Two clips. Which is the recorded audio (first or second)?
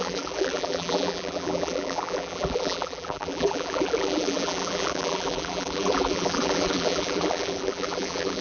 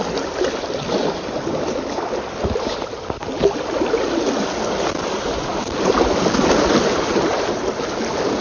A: second